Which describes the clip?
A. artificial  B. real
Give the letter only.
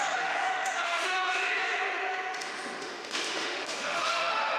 A